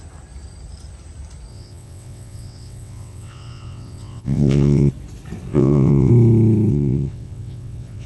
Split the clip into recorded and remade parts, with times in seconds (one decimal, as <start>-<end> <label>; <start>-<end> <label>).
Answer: 0.0-1.5 recorded; 1.5-4.9 remade; 4.9-5.5 recorded; 5.5-6.1 remade; 6.1-6.7 recorded; 6.7-8.1 remade